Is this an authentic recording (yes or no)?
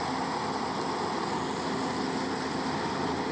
yes